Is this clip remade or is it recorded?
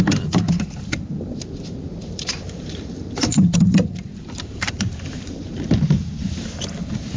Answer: remade